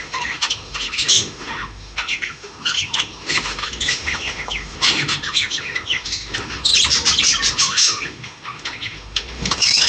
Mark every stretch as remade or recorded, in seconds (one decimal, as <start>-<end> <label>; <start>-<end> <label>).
0.0-6.7 remade; 6.7-7.5 recorded; 7.5-9.9 remade

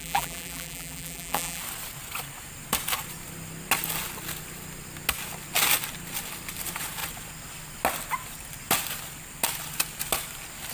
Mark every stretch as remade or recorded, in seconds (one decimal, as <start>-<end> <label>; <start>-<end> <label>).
0.0-1.6 remade; 1.6-10.7 recorded

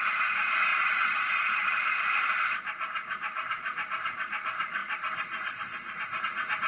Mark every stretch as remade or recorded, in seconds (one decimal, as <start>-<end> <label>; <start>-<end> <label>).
0.0-0.7 recorded; 0.7-2.4 remade; 2.4-4.8 recorded; 4.8-6.2 remade; 6.2-6.7 recorded

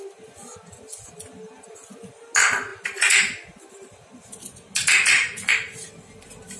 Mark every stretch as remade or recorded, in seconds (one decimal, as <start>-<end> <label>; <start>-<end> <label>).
0.0-6.6 recorded

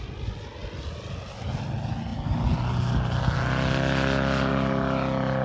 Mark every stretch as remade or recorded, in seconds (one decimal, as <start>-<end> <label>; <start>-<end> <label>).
0.0-5.4 recorded

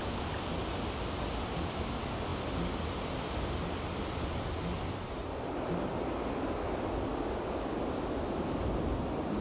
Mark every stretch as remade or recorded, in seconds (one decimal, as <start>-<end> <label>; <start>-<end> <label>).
0.0-9.4 recorded